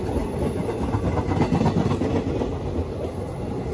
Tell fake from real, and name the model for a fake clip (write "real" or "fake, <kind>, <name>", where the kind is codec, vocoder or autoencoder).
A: real